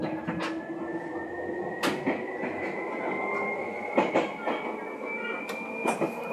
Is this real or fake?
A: real